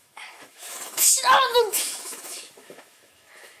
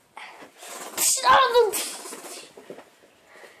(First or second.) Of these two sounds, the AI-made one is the first